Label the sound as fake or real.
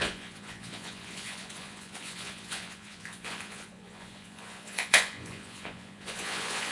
fake